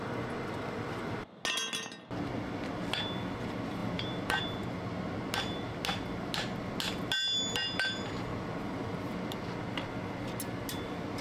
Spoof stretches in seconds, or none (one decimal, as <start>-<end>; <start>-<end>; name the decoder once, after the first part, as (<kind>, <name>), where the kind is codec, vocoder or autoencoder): 3.8-4.4 (vocoder, BigVGAN v2)